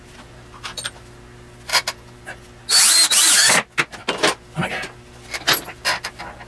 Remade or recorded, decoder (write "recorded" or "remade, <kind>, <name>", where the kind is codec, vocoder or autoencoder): recorded